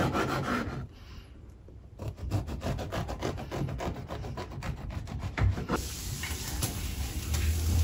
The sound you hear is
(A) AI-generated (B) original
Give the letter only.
A